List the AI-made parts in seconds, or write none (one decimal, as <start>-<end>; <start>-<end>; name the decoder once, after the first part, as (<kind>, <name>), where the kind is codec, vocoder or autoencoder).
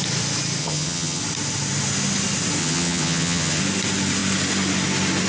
0.6-1.2 (vocoder, HiFi-GAN); 2.6-3.6